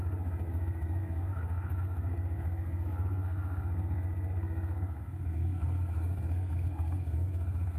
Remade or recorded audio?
remade